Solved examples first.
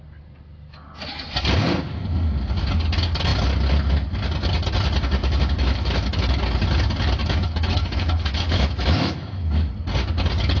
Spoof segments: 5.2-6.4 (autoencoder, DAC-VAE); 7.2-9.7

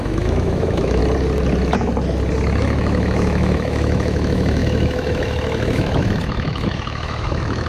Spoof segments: 0.0-1.0 (autoencoder, DAC-VAE); 2.6-7.7

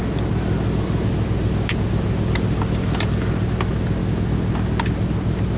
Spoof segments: none

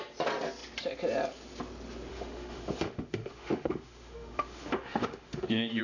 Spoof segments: 2.1-5.8 (autoencoder, DAC-VAE)

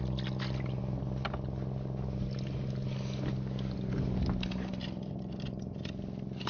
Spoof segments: none